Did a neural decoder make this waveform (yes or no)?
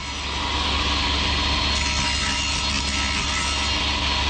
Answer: no